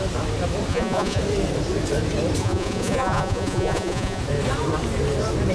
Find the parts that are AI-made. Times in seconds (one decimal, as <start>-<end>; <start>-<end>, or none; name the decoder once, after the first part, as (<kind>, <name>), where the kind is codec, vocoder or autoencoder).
0.7-1.2 (vocoder, Vocos); 2.4-4.2

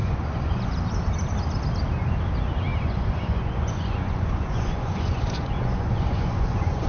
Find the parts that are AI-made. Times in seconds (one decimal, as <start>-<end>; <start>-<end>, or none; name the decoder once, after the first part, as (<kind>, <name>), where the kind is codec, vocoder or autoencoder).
0.0-0.7 (vocoder, Vocos); 2.7-6.9

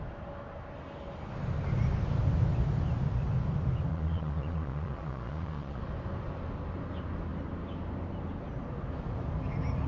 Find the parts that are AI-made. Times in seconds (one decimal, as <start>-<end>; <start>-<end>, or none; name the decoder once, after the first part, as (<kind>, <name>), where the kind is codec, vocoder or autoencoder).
3.9-5.8 (vocoder, Vocos)

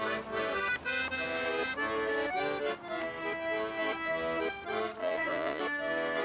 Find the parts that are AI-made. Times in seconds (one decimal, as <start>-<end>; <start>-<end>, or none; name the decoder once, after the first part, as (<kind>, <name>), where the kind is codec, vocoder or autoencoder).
5.0-5.6 (vocoder, Vocos)

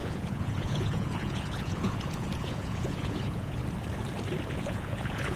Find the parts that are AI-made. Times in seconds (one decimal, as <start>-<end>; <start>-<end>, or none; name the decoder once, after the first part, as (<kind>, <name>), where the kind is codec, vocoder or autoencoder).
0.0-3.6 (vocoder, Vocos); 4.5-5.4

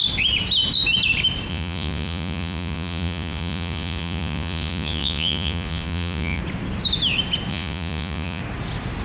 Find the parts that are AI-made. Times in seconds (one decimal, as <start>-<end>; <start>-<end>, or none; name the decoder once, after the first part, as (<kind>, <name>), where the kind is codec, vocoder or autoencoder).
1.5-6.4 (vocoder, Vocos); 7.5-8.4

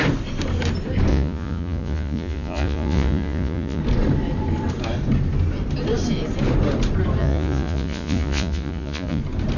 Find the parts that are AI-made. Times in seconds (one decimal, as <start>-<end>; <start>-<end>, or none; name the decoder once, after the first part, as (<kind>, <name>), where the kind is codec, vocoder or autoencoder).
1.1-3.8 (vocoder, Vocos); 7.2-9.2

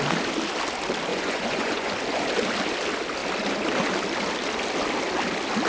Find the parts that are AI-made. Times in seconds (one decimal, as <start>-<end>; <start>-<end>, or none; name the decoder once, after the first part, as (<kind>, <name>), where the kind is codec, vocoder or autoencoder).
1.1-1.9 (vocoder, Vocos)